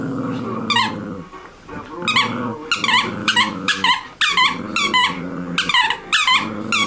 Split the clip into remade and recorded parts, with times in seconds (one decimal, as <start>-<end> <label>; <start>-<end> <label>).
0.0-3.2 recorded; 3.2-3.9 remade; 3.9-6.9 recorded